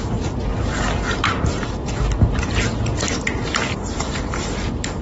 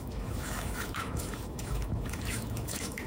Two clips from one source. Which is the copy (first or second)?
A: second